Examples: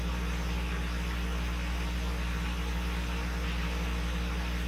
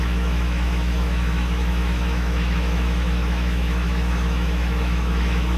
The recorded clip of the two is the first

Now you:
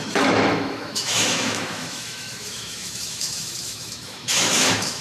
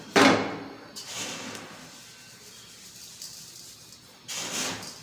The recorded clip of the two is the second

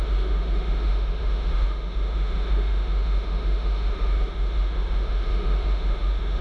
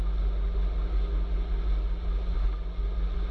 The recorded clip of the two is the second